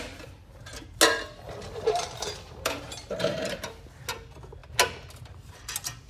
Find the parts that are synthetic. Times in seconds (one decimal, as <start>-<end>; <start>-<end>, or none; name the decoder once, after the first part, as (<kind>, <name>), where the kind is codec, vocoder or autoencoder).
1.6-3.7 (vocoder, BigVGAN v2)